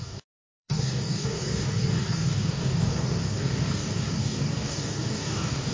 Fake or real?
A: fake